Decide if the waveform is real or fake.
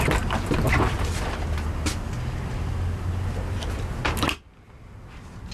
real